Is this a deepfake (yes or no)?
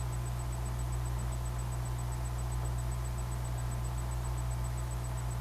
no